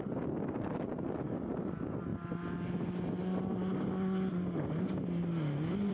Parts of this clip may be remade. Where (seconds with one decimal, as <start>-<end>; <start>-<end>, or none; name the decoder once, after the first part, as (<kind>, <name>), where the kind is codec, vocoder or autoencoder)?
none

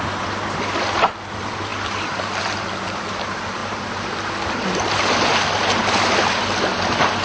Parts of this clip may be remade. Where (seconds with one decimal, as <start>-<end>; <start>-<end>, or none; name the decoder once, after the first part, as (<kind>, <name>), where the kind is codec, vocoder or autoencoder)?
none

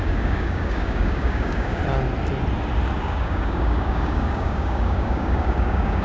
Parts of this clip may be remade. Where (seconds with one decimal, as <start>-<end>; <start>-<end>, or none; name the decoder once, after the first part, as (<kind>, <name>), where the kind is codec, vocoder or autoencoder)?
0.0-1.8 (codec, DAC); 3.0-6.0

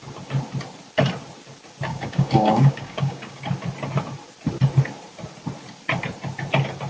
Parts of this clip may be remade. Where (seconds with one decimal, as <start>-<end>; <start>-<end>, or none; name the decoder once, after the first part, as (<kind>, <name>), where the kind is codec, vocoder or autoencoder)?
1.9-3.4 (codec, DAC)

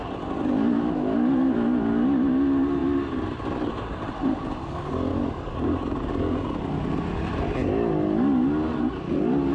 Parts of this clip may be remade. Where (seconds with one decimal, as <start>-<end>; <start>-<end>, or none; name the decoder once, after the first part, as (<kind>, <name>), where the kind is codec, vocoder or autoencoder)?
5.1-6.1 (codec, DAC)